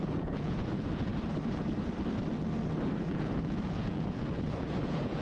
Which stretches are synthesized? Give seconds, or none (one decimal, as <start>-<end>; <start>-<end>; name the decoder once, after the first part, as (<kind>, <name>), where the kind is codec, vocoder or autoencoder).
0.0-1.1 (vocoder, Vocos); 3.0-5.2